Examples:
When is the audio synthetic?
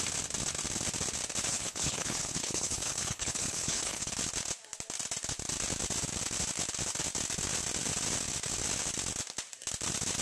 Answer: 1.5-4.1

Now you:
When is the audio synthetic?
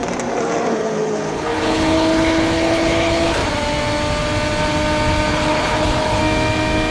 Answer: 0.7-3.4; 5.3-6.2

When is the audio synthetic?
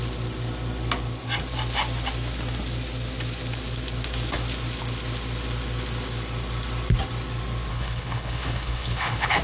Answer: 7.7-9.4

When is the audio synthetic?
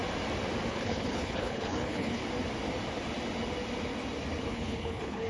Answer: 0.7-2.2; 4.4-5.3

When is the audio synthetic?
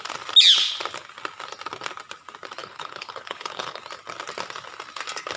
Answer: 2.6-3.8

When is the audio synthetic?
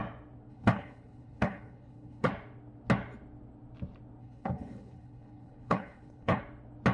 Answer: 0.5-2.3; 4.2-6.4